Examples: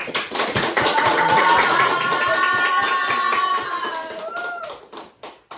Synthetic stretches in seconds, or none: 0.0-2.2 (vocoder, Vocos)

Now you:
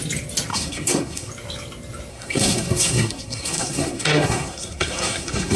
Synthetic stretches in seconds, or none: 0.5-1.3 (codec, SNAC); 2.1-5.6